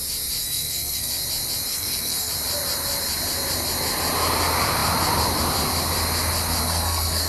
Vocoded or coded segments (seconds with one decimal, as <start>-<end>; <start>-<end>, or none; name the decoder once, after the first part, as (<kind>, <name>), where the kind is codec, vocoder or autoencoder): 0.4-1.1 (codec, SNAC); 1.7-2.3; 6.6-7.3